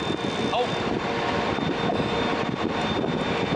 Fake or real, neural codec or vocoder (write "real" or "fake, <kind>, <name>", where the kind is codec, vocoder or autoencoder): real